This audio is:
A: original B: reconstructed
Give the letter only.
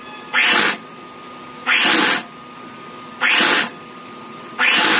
A